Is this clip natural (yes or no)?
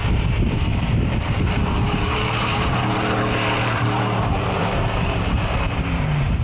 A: no